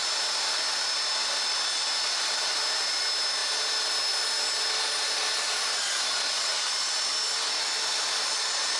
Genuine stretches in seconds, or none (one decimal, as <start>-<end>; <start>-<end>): 0.0-8.8